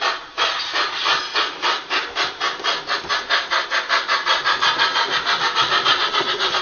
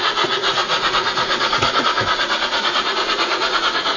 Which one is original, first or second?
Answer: first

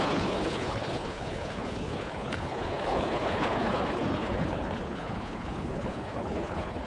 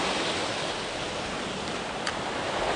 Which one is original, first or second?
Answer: second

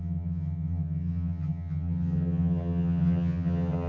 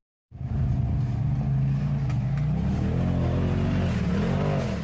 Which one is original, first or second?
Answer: second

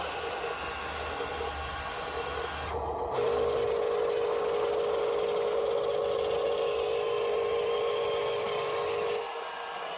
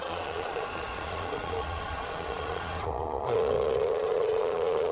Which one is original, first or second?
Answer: first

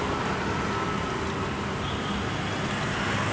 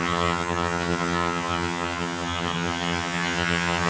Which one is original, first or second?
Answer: first